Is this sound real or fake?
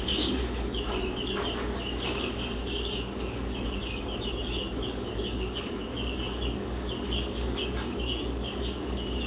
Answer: fake